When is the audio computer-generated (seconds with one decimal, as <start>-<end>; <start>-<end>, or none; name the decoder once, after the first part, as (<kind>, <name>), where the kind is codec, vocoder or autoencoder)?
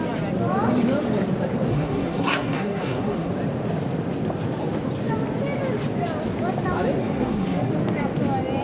1.7-3.3 (codec, SNAC); 7.0-7.7